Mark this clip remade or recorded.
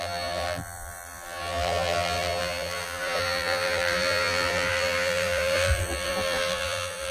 remade